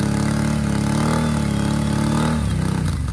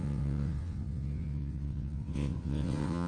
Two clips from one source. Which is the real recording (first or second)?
first